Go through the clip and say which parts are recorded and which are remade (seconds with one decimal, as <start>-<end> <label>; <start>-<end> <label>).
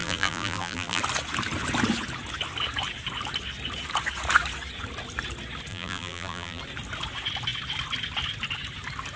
0.0-1.0 remade; 1.0-5.7 recorded; 5.7-6.6 remade; 6.6-9.2 recorded